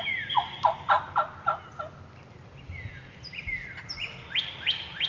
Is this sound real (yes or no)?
yes